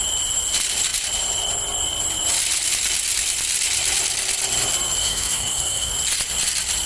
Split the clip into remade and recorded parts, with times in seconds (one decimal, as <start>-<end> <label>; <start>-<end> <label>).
0.0-5.0 recorded; 5.0-5.9 remade; 5.9-6.9 recorded